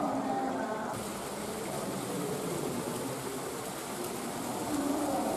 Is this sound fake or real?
real